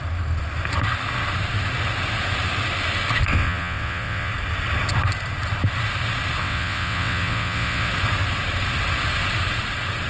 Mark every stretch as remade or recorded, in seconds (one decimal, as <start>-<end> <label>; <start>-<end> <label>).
0.0-3.3 recorded; 3.3-4.3 remade; 4.3-6.4 recorded; 6.4-7.9 remade; 7.9-10.1 recorded